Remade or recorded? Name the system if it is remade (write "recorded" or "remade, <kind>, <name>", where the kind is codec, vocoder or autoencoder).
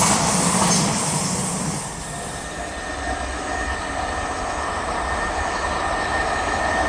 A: recorded